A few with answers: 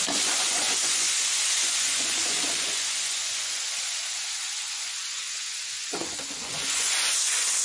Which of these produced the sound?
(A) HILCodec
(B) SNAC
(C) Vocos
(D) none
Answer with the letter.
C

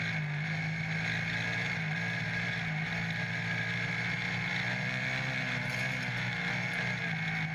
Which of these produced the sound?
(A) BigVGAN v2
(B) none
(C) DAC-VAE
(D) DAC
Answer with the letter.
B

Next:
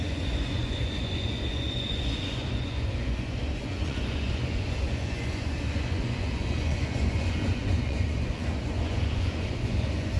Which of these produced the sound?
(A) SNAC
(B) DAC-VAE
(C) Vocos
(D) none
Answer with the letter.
C